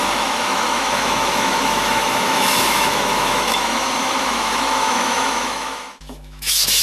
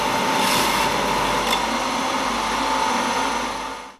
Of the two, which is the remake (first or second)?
first